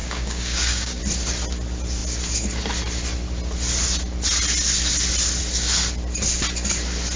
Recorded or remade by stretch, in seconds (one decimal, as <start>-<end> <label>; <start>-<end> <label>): 0.0-1.0 remade; 1.0-7.2 recorded